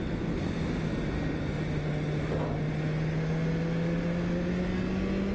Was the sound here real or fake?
real